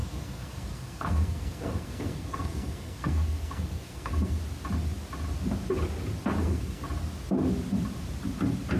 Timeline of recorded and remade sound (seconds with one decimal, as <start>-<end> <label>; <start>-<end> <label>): 0.0-4.4 remade; 4.4-6.4 recorded; 6.4-6.9 remade; 6.9-8.8 recorded